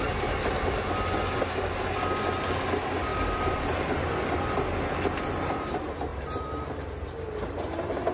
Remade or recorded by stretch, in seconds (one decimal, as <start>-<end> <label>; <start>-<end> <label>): 0.0-3.1 recorded; 3.1-4.1 remade; 4.1-6.1 recorded; 6.1-7.1 remade; 7.1-8.1 recorded